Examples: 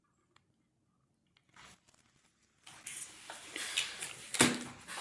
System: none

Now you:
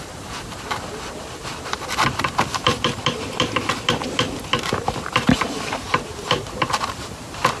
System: vocoder, BigVGAN v2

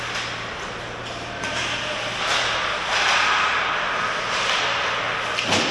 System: none